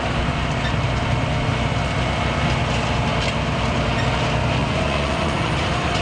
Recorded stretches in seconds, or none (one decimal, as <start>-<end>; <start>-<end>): 0.0-4.6; 5.5-6.0